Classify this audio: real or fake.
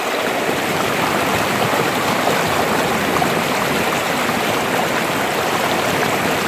real